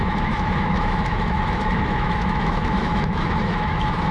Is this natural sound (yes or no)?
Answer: no